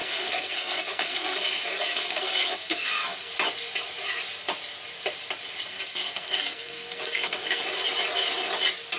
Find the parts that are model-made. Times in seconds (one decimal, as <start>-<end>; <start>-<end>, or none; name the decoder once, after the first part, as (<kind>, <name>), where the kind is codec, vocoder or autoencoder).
0.0-3.3 (codec, SNAC); 5.7-7.6